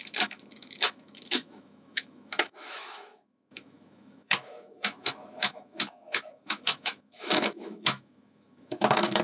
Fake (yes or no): yes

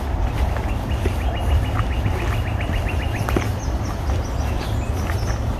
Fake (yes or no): no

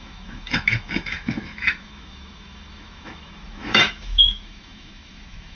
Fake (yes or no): yes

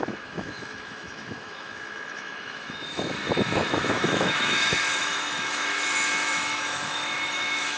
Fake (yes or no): yes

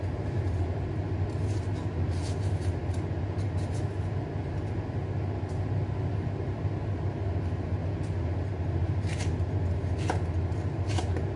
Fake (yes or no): no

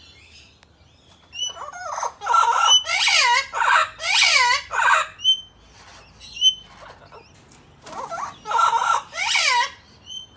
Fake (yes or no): no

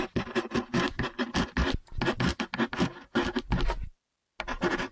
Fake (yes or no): no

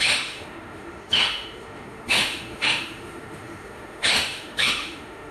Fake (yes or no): yes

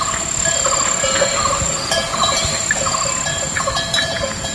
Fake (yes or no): no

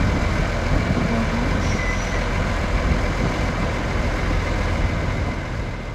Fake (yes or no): no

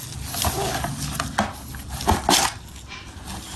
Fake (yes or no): no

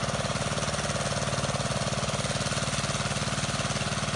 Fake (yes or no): no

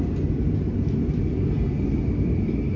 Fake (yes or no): no